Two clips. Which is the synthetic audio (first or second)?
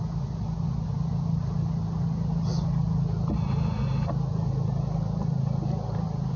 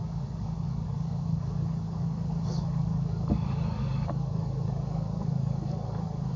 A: second